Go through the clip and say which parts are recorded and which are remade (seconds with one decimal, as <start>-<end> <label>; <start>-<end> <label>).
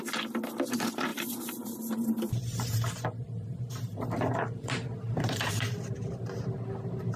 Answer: 0.0-1.1 recorded; 1.1-5.4 remade; 5.4-7.2 recorded